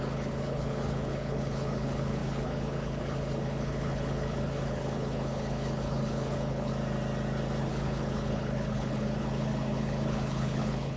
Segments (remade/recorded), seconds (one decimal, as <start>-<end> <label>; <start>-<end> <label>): 0.0-6.7 remade; 6.7-7.6 recorded; 7.6-11.0 remade